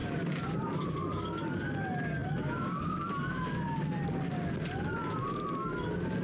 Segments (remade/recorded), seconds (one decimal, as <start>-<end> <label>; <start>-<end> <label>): 0.0-0.8 remade; 0.8-6.2 recorded